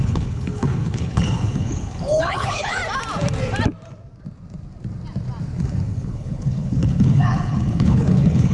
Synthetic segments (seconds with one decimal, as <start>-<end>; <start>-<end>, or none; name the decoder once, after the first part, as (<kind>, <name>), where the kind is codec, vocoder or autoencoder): 0.0-2.8 (codec, HILCodec); 5.6-8.5